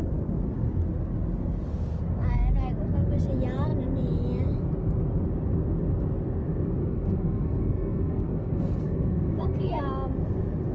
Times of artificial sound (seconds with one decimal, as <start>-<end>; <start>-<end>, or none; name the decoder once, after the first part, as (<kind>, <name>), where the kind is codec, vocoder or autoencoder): 6.8-9.8 (codec, SNAC)